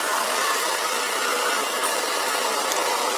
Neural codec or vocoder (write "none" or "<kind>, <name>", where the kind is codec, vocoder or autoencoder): vocoder, BigVGAN v2